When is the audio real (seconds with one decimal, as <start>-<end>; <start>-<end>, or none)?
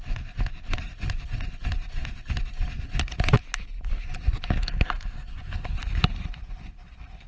0.0-7.3